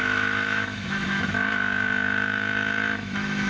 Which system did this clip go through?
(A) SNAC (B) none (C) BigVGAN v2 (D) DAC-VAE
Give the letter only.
D